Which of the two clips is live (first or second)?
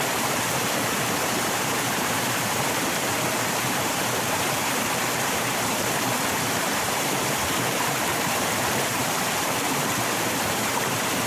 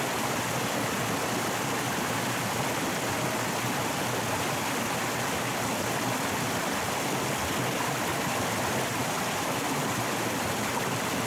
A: second